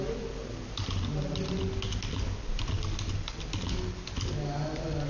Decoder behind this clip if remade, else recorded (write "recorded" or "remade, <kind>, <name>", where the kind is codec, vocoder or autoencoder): recorded